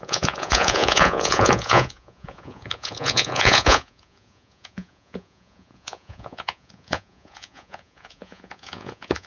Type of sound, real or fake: fake